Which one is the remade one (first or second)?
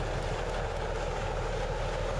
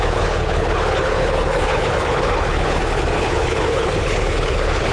second